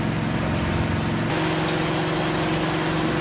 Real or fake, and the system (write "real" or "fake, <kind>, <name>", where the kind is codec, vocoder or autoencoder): real